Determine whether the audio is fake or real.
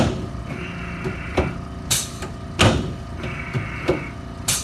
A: real